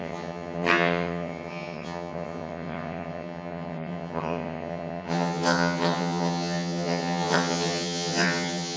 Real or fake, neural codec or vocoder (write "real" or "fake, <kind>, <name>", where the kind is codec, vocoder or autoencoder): fake, vocoder, HiFi-GAN